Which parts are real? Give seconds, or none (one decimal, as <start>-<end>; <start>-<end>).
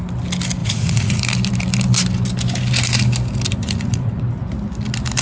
0.0-0.6; 1.2-3.6; 4.2-5.2